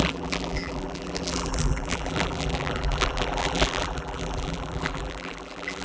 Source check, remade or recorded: remade